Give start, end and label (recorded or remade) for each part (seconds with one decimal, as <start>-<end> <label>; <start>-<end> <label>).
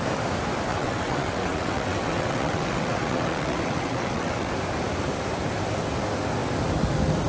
0.0-0.7 recorded; 0.7-4.5 remade; 4.5-7.3 recorded